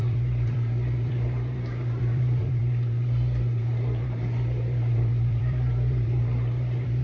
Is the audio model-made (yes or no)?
yes